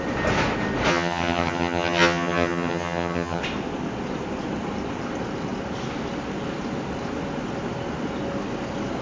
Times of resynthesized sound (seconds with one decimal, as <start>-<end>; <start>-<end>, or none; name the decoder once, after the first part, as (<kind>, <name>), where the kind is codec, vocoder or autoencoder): 0.9-3.4 (vocoder, HiFi-GAN)